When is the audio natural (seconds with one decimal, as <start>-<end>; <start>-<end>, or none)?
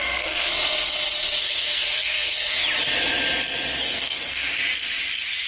0.5-1.4; 2.6-3.8; 4.6-5.5